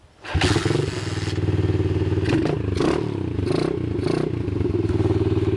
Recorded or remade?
recorded